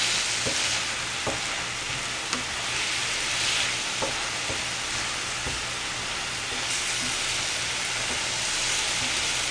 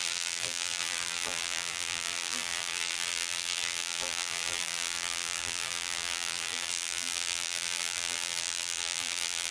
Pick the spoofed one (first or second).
second